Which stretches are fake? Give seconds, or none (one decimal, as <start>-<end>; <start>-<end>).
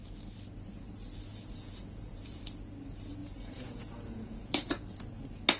1.3-2.4; 3.2-5.0